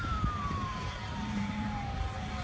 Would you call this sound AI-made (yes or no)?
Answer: yes